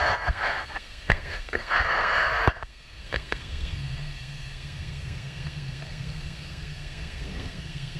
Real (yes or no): no